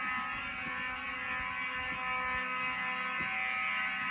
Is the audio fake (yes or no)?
no